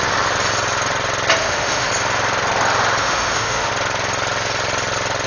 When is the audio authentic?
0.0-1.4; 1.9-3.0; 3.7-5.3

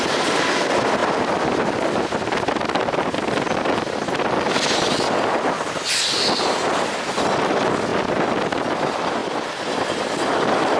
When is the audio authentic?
0.0-10.8

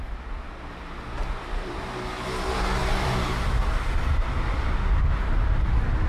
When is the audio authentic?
0.0-1.2; 1.8-2.8; 4.7-6.1